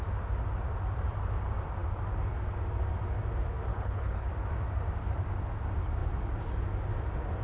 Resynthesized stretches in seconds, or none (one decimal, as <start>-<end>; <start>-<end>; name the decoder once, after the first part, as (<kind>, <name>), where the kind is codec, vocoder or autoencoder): 3.7-4.3 (codec, HILCodec)